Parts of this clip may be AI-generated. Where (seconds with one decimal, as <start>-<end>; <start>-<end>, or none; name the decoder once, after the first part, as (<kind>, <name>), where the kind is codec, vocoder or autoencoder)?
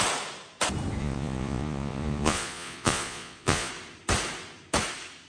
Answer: 1.0-3.7 (vocoder, Vocos)